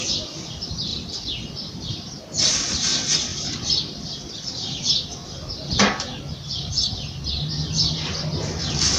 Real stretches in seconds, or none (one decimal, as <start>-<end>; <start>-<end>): 0.0-0.9; 1.9-3.3; 4.8-9.0